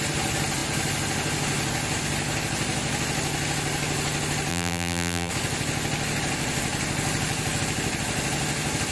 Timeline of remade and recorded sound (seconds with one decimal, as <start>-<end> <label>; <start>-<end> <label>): 0.0-4.5 recorded; 4.5-5.3 remade; 5.3-8.9 recorded